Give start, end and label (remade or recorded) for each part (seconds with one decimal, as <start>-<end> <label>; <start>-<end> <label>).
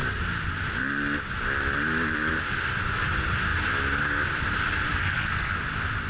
0.0-5.0 recorded; 5.0-5.6 remade; 5.6-6.1 recorded